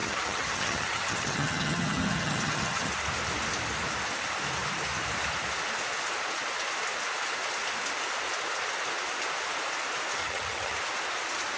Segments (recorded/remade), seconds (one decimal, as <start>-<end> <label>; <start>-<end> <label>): 0.0-2.9 remade; 2.9-10.2 recorded; 10.2-10.8 remade; 10.8-11.6 recorded